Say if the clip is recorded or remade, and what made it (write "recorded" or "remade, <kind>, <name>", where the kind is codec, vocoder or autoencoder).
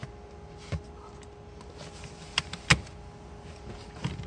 recorded